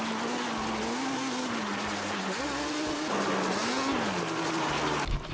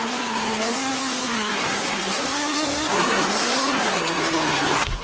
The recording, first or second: first